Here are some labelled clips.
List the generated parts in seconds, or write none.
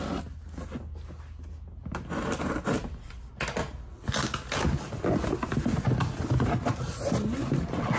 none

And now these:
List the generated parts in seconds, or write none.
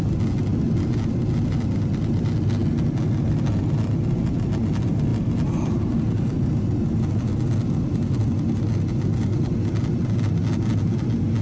none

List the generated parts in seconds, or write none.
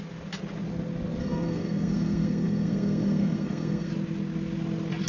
1.2-3.9